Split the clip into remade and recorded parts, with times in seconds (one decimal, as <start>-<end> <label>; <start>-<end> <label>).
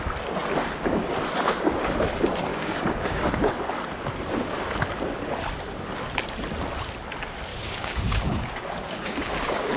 0.0-2.5 recorded; 2.5-3.5 remade; 3.5-7.5 recorded; 7.5-9.8 remade